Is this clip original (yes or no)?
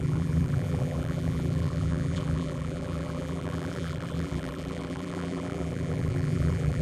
no